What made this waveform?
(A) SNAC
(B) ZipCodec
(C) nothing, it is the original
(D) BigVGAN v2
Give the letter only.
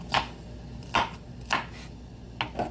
C